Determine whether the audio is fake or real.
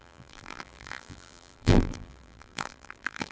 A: fake